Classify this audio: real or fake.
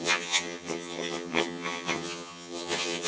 fake